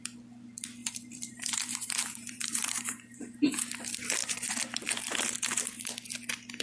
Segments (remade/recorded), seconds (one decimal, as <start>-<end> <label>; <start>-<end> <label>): 0.0-0.8 recorded; 0.8-3.2 remade; 3.2-6.6 recorded